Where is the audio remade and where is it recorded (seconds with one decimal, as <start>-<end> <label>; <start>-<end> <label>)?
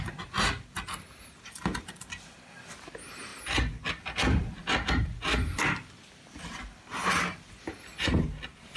0.0-8.8 recorded